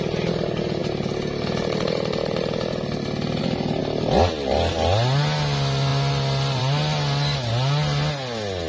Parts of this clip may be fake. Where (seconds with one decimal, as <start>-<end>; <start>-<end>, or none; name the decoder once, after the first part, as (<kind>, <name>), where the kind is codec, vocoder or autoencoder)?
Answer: none